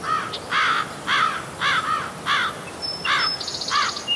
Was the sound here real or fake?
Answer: real